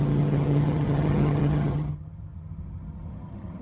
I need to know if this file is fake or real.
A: fake